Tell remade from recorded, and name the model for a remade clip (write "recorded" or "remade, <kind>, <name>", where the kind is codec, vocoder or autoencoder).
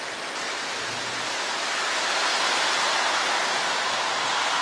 recorded